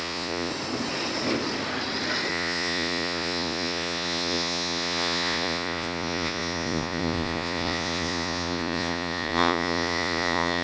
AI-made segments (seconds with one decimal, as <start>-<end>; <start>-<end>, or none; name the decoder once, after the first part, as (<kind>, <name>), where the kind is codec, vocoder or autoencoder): 0.0-0.5 (vocoder, Vocos); 2.3-10.6